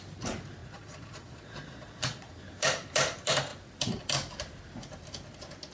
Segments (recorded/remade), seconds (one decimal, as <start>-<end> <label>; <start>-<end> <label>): 0.0-0.6 recorded; 0.6-2.4 remade; 2.4-5.7 recorded